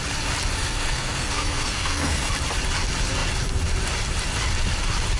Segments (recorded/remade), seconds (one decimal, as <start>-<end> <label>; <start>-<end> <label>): 0.0-0.6 recorded; 0.6-2.3 remade; 2.3-5.2 recorded